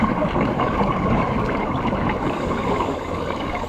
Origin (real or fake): fake